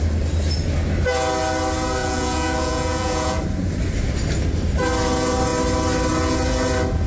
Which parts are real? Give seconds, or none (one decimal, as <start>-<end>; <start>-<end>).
0.0-2.0; 3.4-7.1